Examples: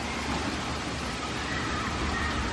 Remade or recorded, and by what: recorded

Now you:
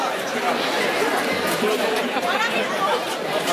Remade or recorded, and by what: remade, vocoder, BigVGAN v2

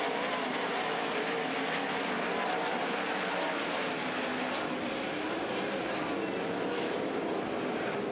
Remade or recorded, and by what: recorded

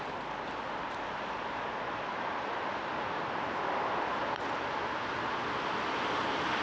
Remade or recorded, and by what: recorded